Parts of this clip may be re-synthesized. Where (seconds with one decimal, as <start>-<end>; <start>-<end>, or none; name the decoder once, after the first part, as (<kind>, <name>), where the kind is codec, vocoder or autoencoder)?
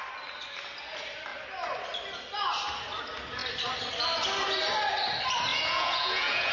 5.5-6.5 (vocoder, Vocos)